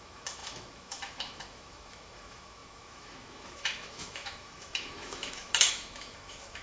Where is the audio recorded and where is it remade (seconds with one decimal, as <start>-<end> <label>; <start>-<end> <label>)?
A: 0.0-6.6 remade